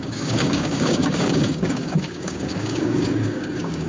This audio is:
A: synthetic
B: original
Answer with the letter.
A